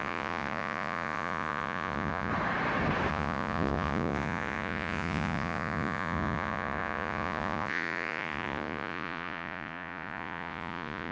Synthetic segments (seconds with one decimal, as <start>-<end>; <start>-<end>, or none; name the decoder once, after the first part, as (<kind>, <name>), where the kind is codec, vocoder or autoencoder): 0.0-2.3 (vocoder, Vocos); 3.1-11.1